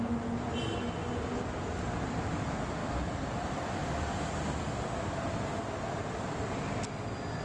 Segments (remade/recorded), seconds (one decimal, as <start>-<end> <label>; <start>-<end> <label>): 0.0-2.8 recorded; 2.8-6.6 remade; 6.6-7.4 recorded